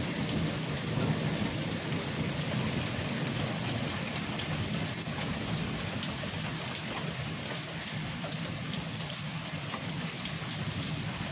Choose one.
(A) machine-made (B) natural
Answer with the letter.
B